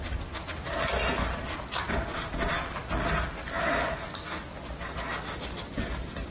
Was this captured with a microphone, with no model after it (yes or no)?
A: yes